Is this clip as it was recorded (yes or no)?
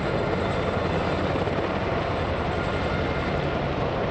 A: yes